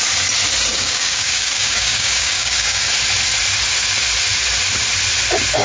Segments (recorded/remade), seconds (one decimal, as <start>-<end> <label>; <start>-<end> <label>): 0.0-0.7 recorded; 0.7-2.9 remade; 2.9-5.6 recorded